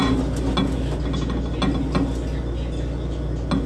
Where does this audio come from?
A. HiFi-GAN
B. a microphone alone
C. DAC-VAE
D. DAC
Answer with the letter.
B